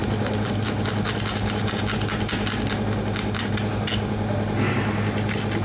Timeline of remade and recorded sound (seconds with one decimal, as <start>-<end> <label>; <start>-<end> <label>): 0.0-5.6 recorded